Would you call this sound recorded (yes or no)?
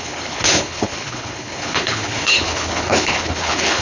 no